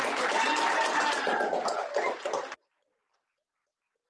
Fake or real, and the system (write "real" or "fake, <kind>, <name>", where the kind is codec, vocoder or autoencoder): real